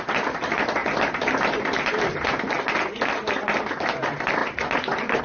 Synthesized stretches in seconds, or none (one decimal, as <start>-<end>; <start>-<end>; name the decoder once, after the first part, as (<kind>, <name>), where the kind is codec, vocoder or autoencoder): none